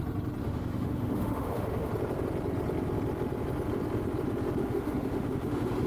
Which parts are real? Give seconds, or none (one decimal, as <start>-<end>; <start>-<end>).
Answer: 0.0-0.4; 1.9-4.6